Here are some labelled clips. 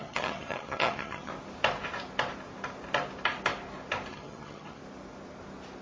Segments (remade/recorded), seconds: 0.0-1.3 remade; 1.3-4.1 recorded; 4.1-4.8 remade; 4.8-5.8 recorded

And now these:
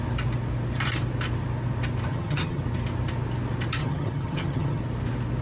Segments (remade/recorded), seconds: 0.0-2.1 recorded; 2.1-2.6 remade; 2.6-3.8 recorded; 3.8-4.8 remade; 4.8-5.4 recorded